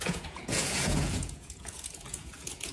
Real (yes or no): no